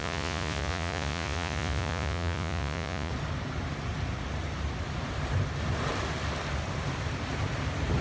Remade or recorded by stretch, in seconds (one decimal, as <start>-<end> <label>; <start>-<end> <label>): 0.0-3.1 remade; 3.1-8.0 recorded